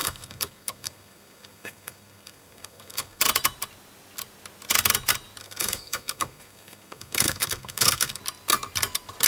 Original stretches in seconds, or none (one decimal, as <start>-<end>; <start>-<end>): 3.2-5.4; 8.2-9.3